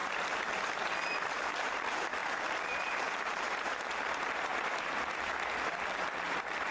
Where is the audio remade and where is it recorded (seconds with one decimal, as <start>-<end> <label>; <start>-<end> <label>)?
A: 0.0-1.3 recorded; 1.3-6.7 remade